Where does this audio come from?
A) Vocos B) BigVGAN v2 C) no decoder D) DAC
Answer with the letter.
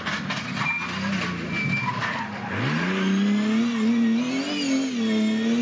C